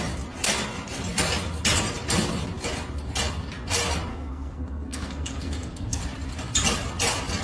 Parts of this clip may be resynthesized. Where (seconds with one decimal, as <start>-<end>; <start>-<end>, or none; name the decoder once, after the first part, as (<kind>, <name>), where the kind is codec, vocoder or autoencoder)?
4.1-6.0 (codec, SNAC)